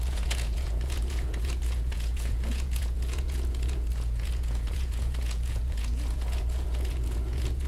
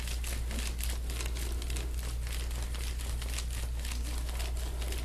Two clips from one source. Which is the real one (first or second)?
second